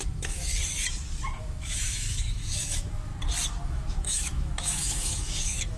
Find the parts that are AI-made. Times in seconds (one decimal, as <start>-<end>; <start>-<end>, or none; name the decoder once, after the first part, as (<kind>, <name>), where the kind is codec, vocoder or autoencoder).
0.0-0.5 (autoencoder, DAC-VAE); 1.4-3.1; 3.6-5.8